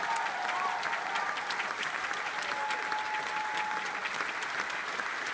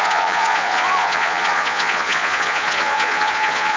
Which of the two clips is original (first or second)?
first